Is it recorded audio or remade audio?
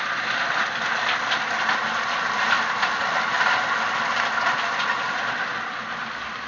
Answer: recorded